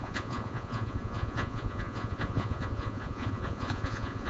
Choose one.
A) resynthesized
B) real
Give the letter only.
A